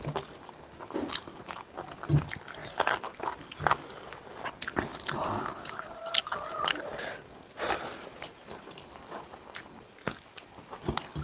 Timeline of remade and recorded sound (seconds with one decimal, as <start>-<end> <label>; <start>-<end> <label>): 0.0-2.6 recorded; 2.6-3.4 remade; 3.4-4.9 recorded; 4.9-6.2 remade; 6.2-11.2 recorded